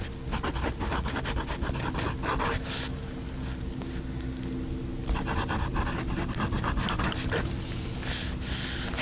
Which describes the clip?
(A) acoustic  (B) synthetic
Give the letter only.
A